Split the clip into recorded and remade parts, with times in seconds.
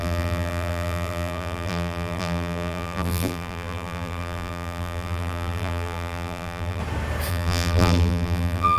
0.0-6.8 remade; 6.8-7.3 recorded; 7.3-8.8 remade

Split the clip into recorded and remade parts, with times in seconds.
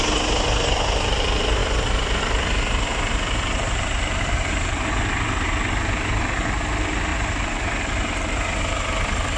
0.0-1.6 recorded; 1.6-4.2 remade; 4.2-7.1 recorded; 7.1-7.8 remade; 7.8-9.4 recorded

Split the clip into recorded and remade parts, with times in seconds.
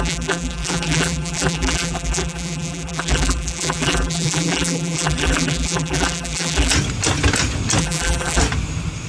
0.0-6.7 remade; 6.7-7.8 recorded; 7.8-8.4 remade; 8.4-9.1 recorded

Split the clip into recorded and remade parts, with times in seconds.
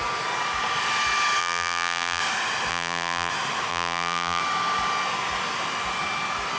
0.0-1.4 recorded; 1.4-2.2 remade; 2.2-2.7 recorded; 2.7-3.3 remade; 3.3-3.7 recorded; 3.7-4.4 remade; 4.4-6.6 recorded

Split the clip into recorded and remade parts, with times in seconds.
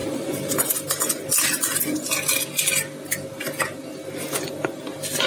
0.0-0.7 remade; 0.7-5.3 recorded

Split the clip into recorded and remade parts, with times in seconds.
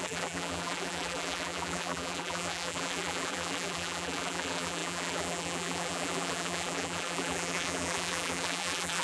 0.0-9.0 remade